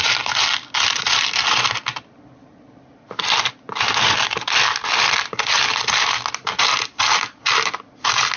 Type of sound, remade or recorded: recorded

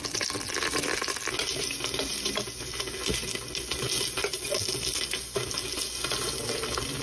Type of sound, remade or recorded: recorded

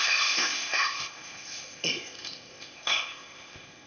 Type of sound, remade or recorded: remade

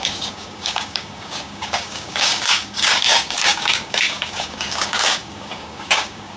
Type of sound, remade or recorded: remade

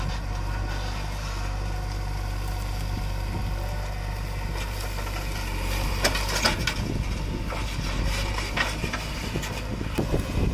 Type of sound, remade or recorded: recorded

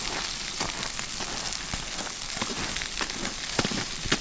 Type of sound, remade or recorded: recorded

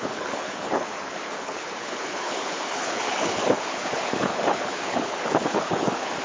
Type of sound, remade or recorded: remade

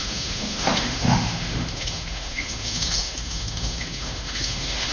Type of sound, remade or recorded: remade